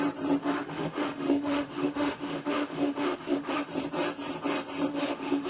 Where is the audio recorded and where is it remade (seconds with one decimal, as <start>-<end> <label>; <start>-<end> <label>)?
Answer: 0.0-0.4 recorded; 0.4-3.7 remade; 3.7-4.9 recorded; 4.9-5.5 remade